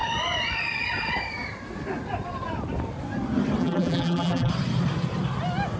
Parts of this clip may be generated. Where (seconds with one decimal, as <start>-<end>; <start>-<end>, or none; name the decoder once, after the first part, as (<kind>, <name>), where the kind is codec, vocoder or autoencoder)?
3.6-4.5 (vocoder, BigVGAN v2)